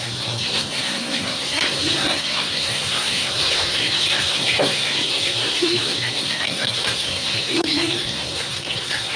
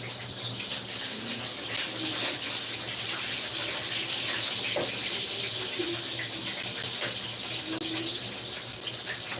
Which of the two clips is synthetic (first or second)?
first